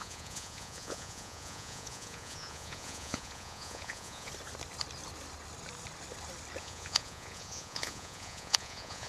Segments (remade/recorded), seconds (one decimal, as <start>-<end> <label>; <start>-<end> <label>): 0.0-4.3 remade; 4.3-6.6 recorded; 6.6-9.1 remade